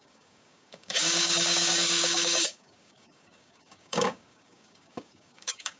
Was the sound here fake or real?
fake